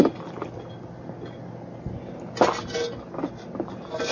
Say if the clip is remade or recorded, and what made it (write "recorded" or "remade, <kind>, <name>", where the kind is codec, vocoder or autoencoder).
recorded